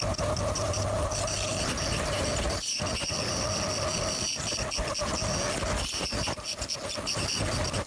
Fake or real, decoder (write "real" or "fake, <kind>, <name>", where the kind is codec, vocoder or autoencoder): real